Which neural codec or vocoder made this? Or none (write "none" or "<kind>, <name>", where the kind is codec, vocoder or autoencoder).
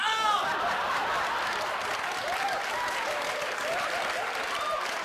none